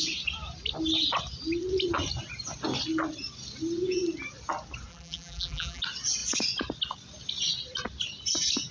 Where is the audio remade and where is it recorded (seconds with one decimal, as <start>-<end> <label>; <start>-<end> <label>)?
0.0-4.9 recorded; 4.9-5.8 remade; 5.8-8.7 recorded